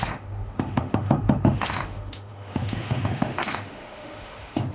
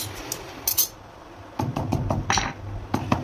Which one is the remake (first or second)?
first